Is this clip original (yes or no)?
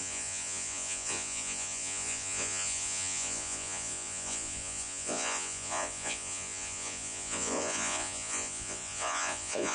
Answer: no